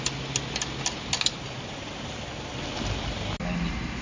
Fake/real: real